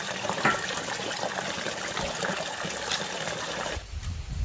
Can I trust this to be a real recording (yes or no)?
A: yes